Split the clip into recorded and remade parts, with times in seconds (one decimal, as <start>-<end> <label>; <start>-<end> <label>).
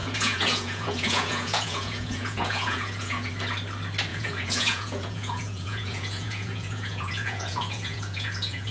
0.0-3.3 remade; 3.3-4.1 recorded; 4.1-8.7 remade